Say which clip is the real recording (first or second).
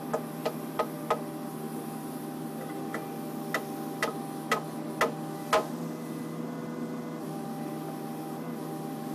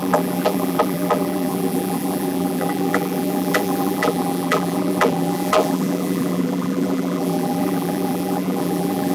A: first